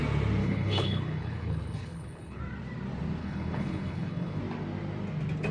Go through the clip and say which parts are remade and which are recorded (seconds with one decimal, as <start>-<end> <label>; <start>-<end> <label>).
0.0-0.4 recorded; 0.4-2.4 remade; 2.4-3.2 recorded; 3.2-4.4 remade; 4.4-5.5 recorded